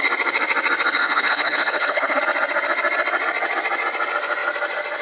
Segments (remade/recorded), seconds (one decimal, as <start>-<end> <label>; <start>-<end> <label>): 0.0-1.0 recorded; 1.0-2.2 remade; 2.2-5.0 recorded